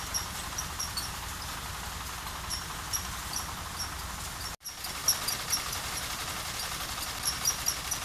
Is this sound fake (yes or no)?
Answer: no